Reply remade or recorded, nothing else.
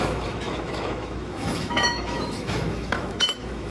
remade